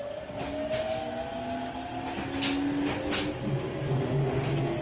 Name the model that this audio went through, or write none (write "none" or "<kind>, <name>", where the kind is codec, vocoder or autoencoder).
none